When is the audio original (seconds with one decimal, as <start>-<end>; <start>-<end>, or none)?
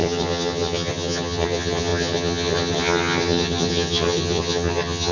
none